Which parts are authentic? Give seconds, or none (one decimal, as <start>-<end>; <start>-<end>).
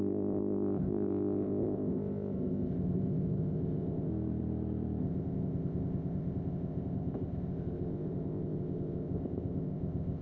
4.1-5.0